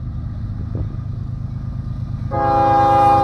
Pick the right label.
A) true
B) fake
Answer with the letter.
A